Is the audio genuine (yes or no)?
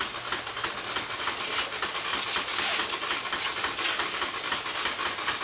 yes